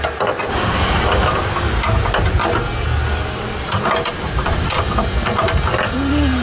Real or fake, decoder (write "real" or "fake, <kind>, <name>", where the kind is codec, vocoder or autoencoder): real